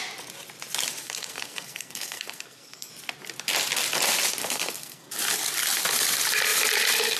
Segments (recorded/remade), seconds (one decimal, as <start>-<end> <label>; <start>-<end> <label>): 0.0-1.0 recorded; 1.0-2.9 remade; 2.9-4.4 recorded; 4.4-5.1 remade; 5.1-7.2 recorded